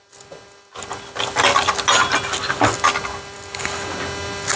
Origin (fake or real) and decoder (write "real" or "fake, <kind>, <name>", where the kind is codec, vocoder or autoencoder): real